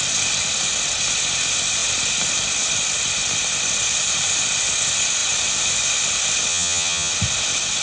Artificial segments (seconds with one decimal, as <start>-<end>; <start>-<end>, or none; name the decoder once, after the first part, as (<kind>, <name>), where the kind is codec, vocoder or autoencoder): 6.5-7.1 (vocoder, HiFi-GAN)